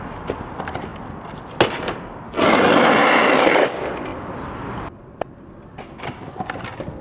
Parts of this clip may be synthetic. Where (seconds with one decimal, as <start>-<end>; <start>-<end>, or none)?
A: none